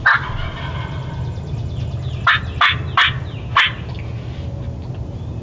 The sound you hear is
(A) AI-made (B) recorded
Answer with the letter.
B